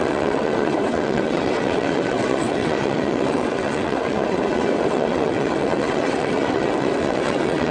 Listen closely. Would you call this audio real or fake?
fake